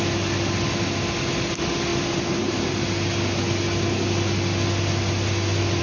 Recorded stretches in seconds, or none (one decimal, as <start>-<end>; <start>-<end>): 0.0-5.8